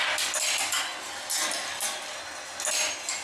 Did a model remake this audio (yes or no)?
no